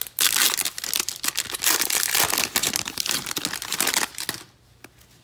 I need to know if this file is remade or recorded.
recorded